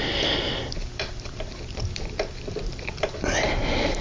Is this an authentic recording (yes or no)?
no